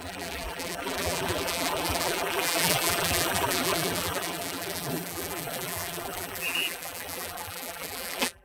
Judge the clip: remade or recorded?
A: remade